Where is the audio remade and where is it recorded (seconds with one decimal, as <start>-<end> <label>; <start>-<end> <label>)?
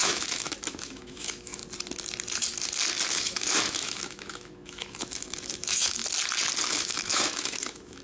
0.0-1.6 remade; 1.6-3.1 recorded; 3.1-6.0 remade; 6.0-6.7 recorded; 6.7-8.0 remade